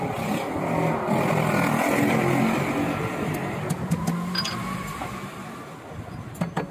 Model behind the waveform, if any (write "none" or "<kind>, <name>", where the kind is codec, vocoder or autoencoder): none